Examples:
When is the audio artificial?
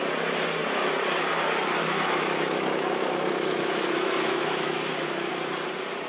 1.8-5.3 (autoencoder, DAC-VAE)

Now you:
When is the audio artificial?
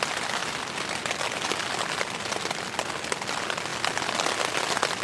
none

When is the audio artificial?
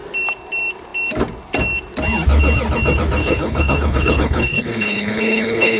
3.2-5.8 (codec, HILCodec)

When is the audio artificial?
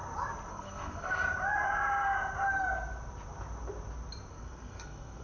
0.5-1.2 (codec, SNAC); 4.3-5.2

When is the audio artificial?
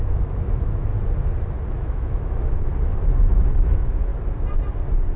0.0-0.9 (autoencoder, DAC-VAE); 1.7-2.7; 3.4-4.1